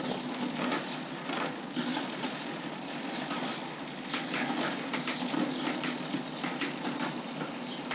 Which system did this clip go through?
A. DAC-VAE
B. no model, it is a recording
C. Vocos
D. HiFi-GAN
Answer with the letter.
B